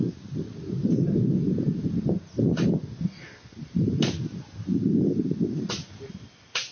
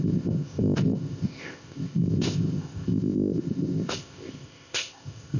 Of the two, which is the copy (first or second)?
second